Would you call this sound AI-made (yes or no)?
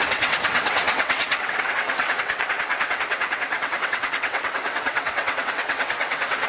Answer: yes